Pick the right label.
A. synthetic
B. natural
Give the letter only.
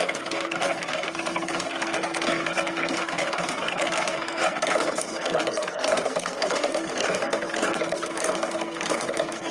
A